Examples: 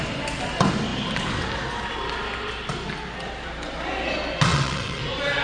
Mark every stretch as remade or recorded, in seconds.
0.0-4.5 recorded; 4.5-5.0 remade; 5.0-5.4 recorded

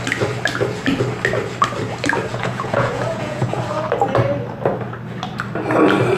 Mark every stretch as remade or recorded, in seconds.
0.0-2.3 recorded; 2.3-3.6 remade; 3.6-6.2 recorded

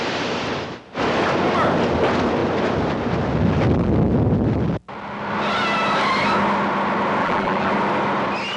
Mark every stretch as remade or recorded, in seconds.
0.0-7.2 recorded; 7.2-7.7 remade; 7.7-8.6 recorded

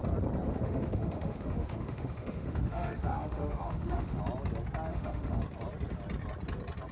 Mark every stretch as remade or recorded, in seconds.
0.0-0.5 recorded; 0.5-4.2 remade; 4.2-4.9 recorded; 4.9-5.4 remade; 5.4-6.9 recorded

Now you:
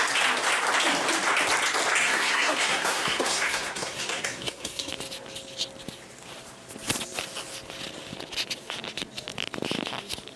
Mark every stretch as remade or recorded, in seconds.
0.0-2.0 recorded; 2.0-4.9 remade; 4.9-10.4 recorded

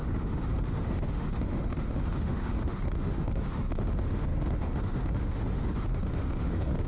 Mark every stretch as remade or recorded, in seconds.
0.0-6.9 remade